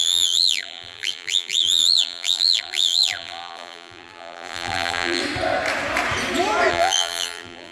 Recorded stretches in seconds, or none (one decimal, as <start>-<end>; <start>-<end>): 5.2-6.7